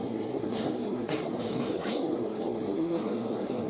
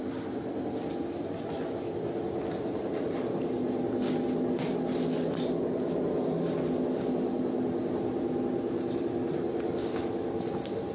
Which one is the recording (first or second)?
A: second